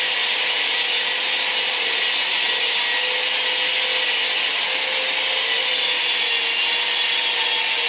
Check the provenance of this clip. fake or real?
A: real